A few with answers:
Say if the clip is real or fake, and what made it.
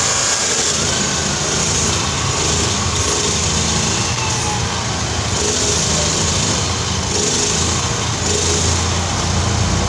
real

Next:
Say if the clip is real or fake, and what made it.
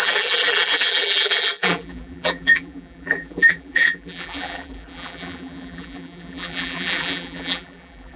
fake, vocoder, BigVGAN v2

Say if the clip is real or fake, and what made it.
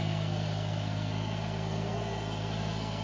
fake, codec, SNAC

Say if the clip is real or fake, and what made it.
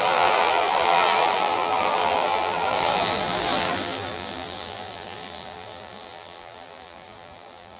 fake, vocoder, BigVGAN v2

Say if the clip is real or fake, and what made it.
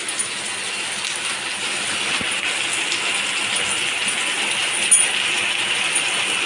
real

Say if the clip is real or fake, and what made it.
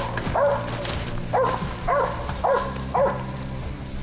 real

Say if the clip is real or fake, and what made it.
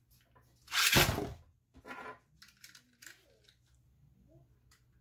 real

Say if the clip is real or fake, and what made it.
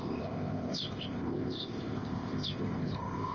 fake, codec, ZipCodec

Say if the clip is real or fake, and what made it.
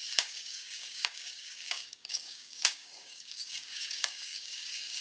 fake, codec, DAC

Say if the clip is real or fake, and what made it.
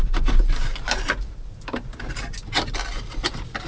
real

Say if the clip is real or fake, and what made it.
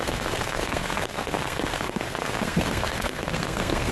fake, codec, SNAC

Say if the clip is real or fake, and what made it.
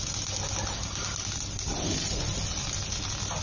real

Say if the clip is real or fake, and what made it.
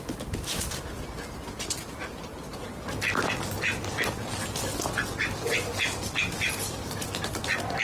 real